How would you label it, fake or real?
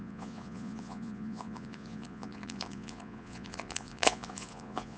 fake